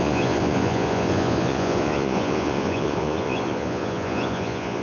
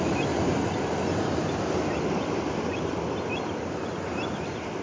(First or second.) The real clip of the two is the second